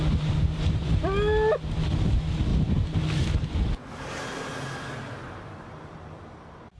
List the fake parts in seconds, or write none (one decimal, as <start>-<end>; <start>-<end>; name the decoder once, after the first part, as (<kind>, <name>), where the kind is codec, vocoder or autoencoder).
none